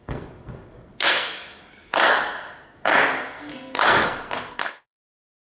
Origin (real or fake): fake